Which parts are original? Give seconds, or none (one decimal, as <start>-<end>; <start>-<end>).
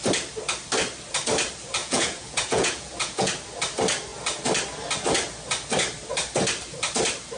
0.0-1.8; 3.3-7.4